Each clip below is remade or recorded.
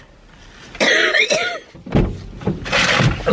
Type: recorded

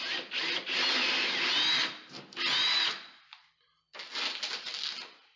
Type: recorded